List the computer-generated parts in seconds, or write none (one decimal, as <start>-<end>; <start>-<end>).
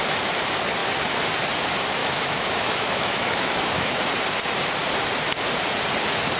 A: 2.0-4.0